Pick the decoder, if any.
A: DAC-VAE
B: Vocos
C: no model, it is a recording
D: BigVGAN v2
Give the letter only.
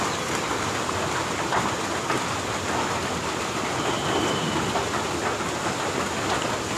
C